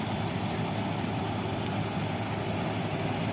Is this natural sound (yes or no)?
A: yes